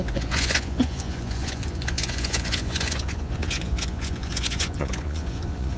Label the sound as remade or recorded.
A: remade